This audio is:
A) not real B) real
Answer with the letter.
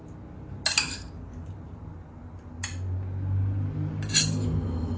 B